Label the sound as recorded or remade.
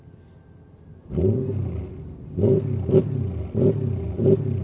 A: recorded